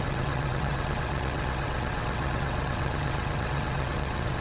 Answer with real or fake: fake